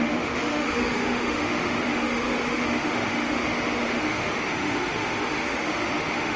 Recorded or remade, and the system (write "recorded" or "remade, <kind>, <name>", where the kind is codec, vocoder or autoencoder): remade, autoencoder, DAC-VAE